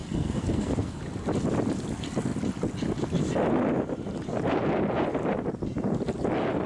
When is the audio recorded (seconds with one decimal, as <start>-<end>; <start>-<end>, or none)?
1.0-6.7